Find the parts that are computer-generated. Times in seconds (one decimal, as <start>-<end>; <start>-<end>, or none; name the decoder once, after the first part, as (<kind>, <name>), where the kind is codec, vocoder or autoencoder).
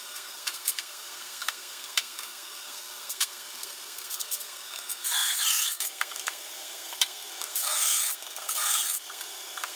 0.0-9.8 (codec, SNAC)